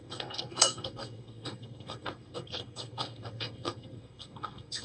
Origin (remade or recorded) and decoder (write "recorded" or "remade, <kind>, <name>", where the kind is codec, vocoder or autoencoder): remade, codec, SNAC